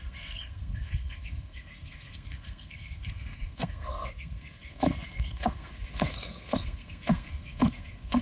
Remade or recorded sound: remade